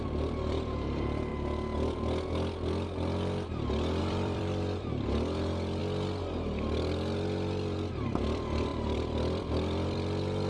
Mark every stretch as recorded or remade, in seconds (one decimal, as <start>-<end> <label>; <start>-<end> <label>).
0.0-1.3 remade; 1.3-4.0 recorded; 4.0-5.8 remade; 5.8-7.9 recorded; 7.9-10.5 remade